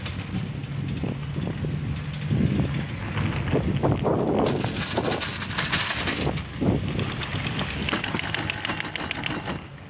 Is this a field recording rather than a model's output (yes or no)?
yes